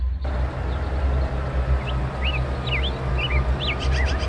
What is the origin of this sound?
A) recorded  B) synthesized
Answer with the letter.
A